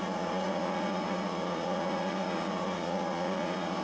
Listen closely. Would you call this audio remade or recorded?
remade